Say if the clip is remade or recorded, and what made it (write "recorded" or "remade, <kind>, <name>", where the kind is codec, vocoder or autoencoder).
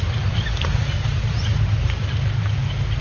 recorded